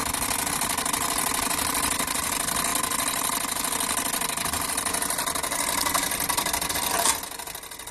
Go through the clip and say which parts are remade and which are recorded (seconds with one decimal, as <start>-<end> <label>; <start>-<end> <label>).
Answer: 0.0-7.9 recorded